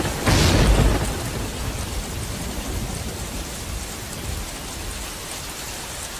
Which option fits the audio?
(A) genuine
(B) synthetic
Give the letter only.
A